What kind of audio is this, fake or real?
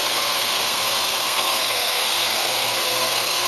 fake